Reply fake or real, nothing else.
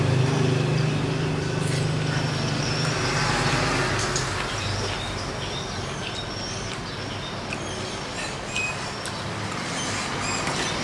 real